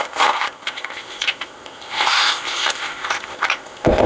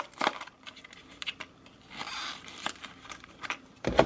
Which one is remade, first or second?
first